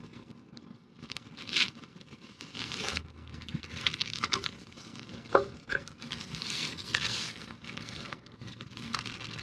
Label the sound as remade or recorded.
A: remade